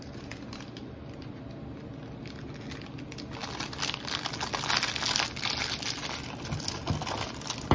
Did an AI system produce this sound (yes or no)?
no